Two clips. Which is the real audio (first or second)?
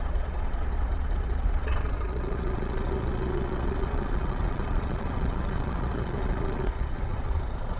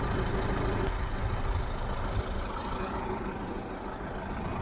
second